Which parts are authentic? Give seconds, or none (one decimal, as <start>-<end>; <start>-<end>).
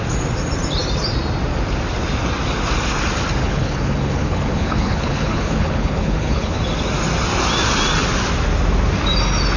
0.0-3.4; 6.6-9.6